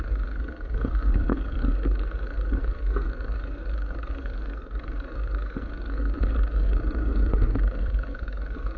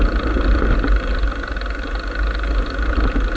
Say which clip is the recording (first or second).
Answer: second